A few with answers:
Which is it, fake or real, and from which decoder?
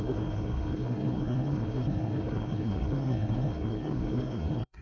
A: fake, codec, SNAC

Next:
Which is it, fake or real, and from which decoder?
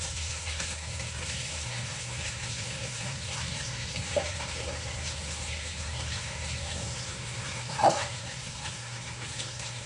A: fake, codec, SNAC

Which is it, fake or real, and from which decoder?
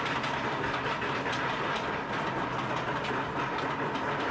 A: real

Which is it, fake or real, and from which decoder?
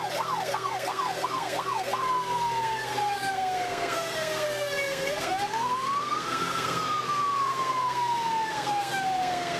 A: fake, codec, SNAC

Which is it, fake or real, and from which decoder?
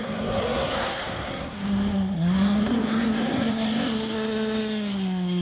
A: fake, codec, SNAC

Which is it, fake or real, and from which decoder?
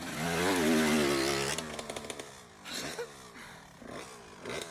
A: real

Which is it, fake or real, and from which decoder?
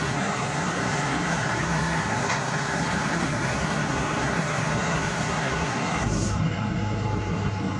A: fake, codec, SNAC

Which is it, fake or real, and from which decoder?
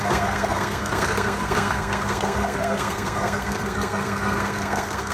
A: fake, codec, SNAC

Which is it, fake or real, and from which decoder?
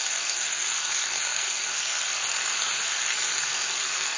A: fake, codec, SNAC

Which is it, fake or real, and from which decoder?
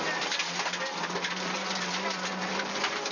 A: real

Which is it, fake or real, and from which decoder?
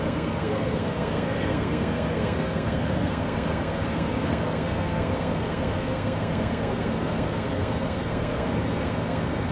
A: fake, codec, SNAC